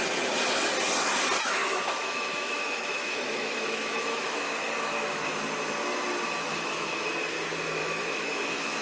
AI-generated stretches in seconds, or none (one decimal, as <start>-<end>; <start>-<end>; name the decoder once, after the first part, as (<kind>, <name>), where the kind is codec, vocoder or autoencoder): 1.4-5.4 (autoencoder, DAC-VAE); 6.5-7.1; 7.8-8.8